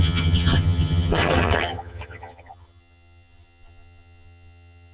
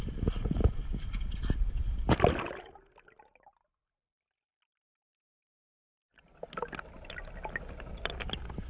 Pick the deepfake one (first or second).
first